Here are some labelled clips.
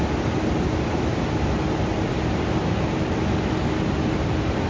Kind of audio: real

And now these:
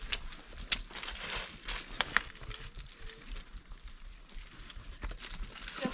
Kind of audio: real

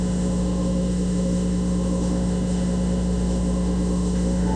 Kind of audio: fake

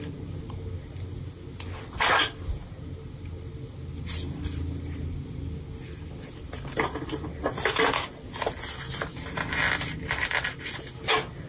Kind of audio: real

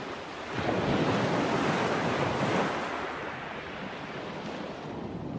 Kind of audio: real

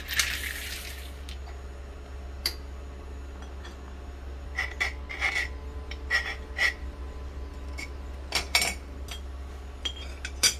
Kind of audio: real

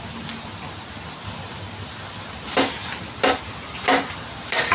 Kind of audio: real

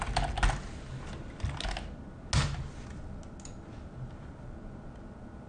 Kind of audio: real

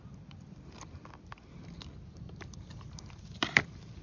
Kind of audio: fake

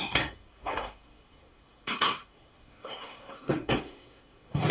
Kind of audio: fake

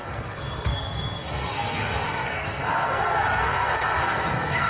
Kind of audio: fake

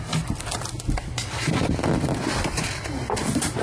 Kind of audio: fake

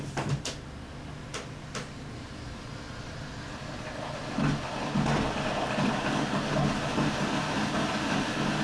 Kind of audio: real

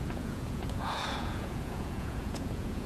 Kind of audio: fake